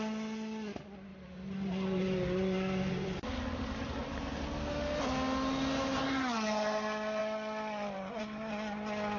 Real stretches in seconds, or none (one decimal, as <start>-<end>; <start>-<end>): 0.0-1.1; 4.7-9.2